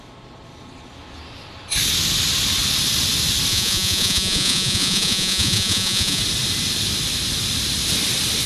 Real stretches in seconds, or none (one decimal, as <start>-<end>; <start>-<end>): 0.0-3.5; 6.2-8.5